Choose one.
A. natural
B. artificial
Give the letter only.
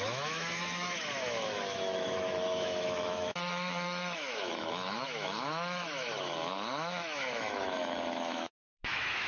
B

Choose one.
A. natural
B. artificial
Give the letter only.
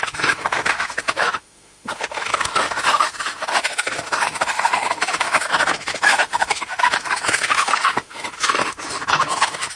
B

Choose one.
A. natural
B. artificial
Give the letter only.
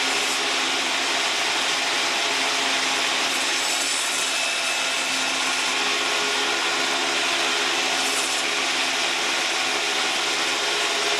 A